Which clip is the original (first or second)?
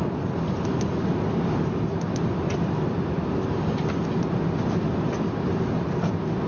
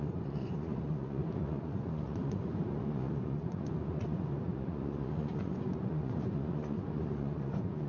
first